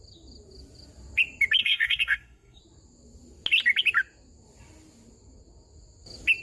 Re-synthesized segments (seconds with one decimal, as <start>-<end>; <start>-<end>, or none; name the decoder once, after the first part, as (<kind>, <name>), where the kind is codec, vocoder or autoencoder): 1.6-2.6 (codec, SNAC)